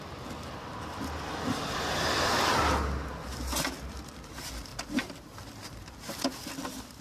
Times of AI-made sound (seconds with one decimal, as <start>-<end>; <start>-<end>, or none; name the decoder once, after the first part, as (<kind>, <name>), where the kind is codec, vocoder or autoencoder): 4.7-6.1 (vocoder, BigVGAN v2)